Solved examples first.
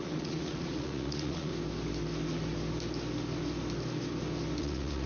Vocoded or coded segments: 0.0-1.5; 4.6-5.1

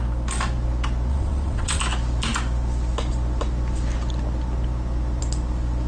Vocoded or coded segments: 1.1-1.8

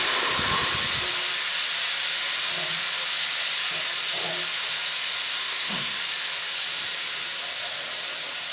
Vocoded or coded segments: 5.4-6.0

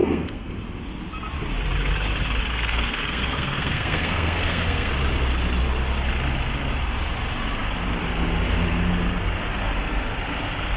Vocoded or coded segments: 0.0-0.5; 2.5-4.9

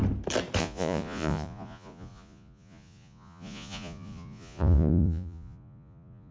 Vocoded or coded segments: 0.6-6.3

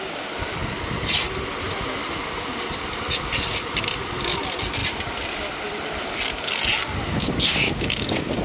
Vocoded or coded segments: 6.8-8.4

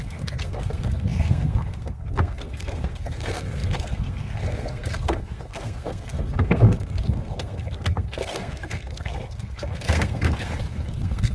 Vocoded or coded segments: 0.0-11.3